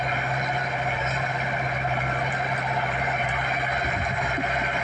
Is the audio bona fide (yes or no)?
yes